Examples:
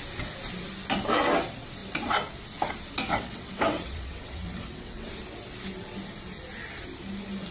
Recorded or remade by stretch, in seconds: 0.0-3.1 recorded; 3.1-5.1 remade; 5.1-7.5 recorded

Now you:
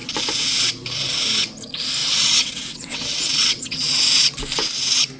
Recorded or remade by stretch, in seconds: 0.0-2.0 recorded; 2.0-4.0 remade; 4.0-5.2 recorded

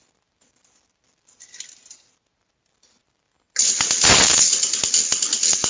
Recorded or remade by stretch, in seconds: 0.0-5.7 recorded

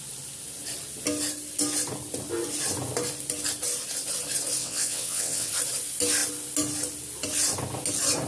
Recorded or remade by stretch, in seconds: 0.0-4.6 recorded; 4.6-5.5 remade; 5.5-8.3 recorded

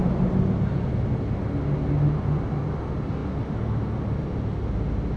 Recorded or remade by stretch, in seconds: 0.0-5.2 recorded

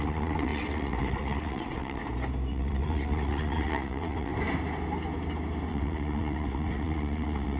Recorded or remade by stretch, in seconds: 0.0-2.0 remade; 2.0-2.5 recorded; 2.5-4.3 remade; 4.3-5.7 recorded; 5.7-7.6 remade